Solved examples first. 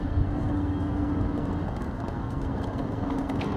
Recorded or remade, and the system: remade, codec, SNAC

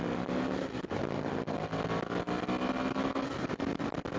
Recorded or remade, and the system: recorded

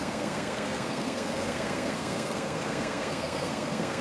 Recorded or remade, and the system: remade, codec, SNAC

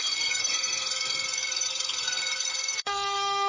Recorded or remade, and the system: remade, codec, SNAC